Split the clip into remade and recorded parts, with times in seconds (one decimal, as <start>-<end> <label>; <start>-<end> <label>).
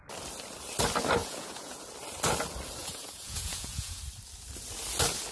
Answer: 0.0-1.2 recorded; 1.2-1.8 remade; 1.8-2.8 recorded; 2.8-4.0 remade; 4.0-5.3 recorded